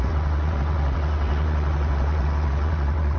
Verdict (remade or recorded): remade